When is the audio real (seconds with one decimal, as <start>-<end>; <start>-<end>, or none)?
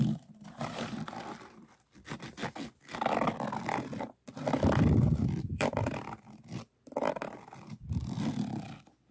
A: 2.4-3.9